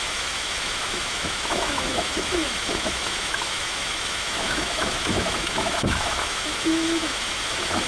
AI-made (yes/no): yes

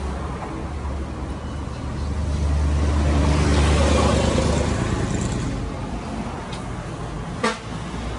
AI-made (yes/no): no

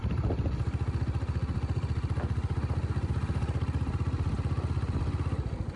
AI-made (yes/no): no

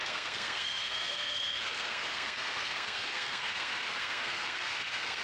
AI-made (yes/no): yes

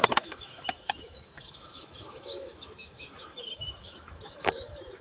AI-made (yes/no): yes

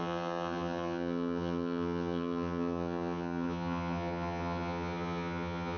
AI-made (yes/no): yes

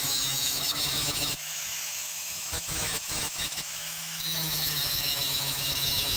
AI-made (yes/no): yes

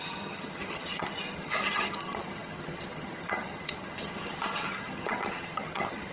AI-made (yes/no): yes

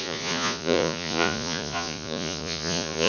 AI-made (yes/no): yes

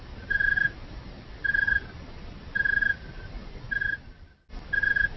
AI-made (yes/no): no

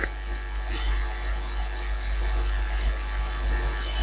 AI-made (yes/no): no